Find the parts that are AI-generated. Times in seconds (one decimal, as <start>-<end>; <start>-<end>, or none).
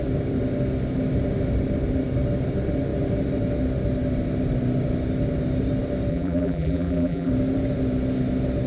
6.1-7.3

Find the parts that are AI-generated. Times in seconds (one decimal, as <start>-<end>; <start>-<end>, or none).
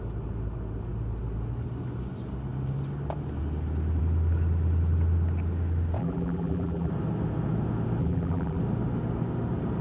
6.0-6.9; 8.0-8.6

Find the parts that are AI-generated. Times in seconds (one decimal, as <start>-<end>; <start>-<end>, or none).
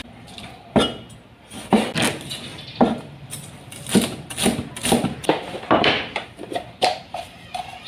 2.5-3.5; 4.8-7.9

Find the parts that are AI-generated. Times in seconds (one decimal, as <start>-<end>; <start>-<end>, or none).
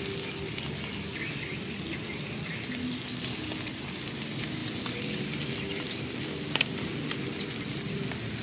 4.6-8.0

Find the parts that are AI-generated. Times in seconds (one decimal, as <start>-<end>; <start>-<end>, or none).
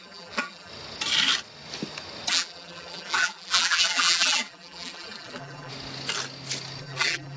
0.0-0.7; 2.3-5.7; 6.8-7.4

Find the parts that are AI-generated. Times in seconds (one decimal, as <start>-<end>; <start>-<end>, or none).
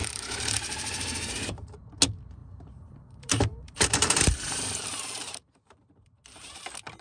0.0-1.9; 2.4-6.6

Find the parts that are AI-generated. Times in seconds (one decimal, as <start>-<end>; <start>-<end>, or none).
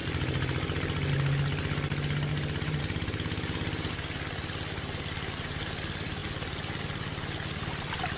2.3-2.8